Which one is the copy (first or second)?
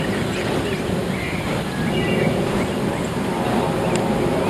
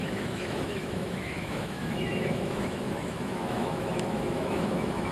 second